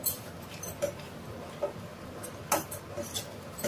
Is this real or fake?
real